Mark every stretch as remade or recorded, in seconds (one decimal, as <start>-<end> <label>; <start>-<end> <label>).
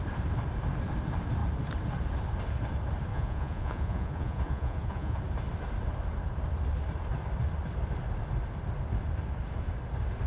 0.0-3.1 recorded; 3.1-5.2 remade; 5.2-10.3 recorded